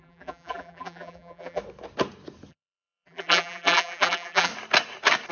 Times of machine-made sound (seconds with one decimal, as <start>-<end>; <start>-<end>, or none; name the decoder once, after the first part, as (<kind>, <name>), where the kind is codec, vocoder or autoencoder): 0.0-1.6 (vocoder, BigVGAN v2); 2.5-4.5